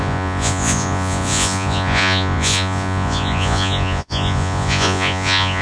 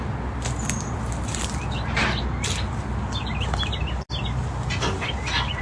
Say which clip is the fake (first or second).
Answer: first